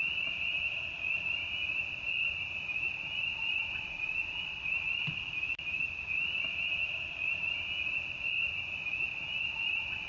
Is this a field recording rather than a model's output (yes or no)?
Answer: yes